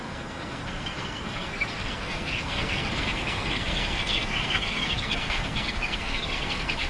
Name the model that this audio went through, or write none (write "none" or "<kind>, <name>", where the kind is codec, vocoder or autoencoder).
codec, SNAC